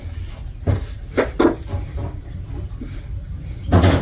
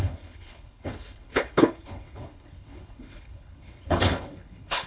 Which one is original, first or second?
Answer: first